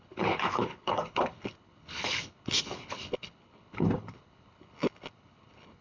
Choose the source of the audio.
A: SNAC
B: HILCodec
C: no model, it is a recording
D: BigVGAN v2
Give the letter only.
B